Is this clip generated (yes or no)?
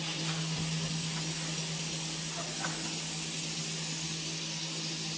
no